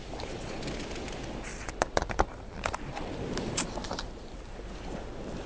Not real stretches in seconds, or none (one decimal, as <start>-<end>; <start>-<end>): 1.5-4.8